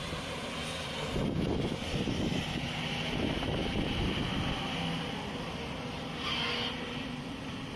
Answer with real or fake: real